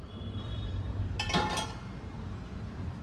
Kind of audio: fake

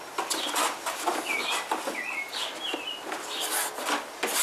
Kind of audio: real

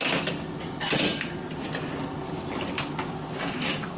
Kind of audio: real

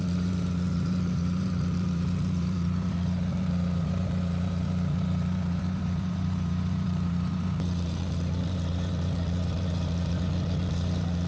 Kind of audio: fake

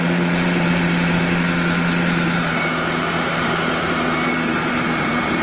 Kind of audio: fake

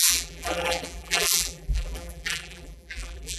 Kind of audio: fake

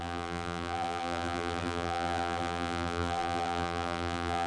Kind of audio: fake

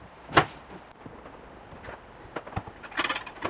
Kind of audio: real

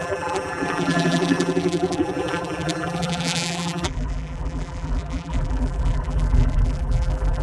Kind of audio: fake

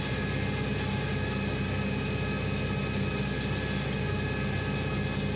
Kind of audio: real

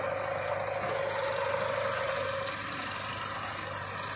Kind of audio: real